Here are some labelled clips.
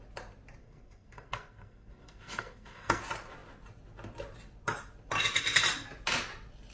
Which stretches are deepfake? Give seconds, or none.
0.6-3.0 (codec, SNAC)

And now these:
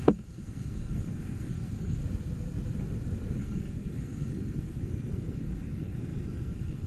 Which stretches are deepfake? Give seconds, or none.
0.0-2.0 (codec, SNAC); 3.4-6.9

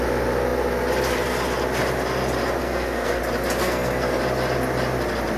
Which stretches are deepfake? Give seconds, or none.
2.6-3.2 (codec, SNAC); 3.6-4.2

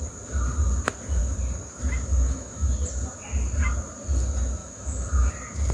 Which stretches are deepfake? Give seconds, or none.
2.1-2.7 (autoencoder, DAC-VAE); 4.6-5.3

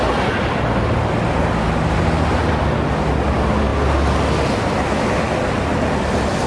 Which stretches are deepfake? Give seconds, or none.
none

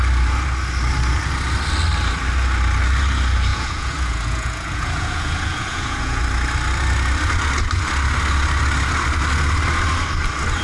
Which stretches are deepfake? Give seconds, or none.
3.5-6.2 (vocoder, Vocos)

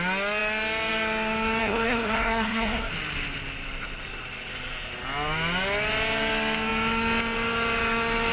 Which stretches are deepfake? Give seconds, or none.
1.6-2.9 (codec, SNAC)

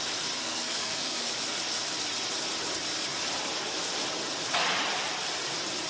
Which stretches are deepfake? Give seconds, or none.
0.4-1.3 (codec, SNAC)